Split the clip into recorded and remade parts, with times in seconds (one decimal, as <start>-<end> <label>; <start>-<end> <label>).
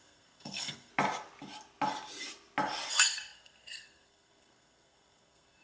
0.0-0.9 remade; 0.9-2.9 recorded; 2.9-5.6 remade